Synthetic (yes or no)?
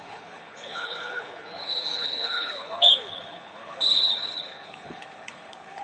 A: yes